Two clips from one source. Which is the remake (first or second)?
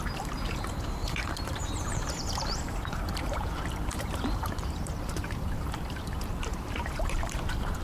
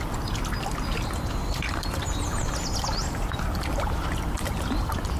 first